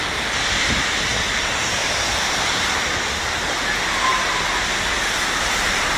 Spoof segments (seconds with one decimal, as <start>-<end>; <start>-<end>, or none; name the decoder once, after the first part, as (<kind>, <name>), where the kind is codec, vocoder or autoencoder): 1.1-3.4 (vocoder, BigVGAN v2)